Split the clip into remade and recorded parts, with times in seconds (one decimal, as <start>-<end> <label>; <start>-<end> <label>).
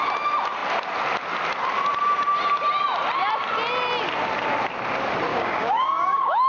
0.0-5.3 recorded; 5.3-6.5 remade